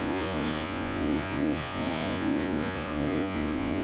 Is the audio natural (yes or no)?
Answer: no